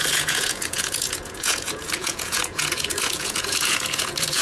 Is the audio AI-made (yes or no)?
yes